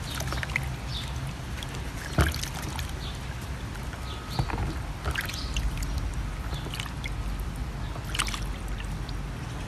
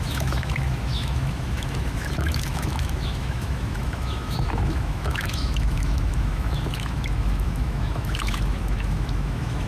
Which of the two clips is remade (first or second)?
second